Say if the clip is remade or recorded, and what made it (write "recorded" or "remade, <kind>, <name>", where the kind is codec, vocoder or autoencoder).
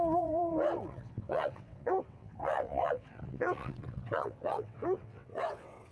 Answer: remade, vocoder, WaveNeXt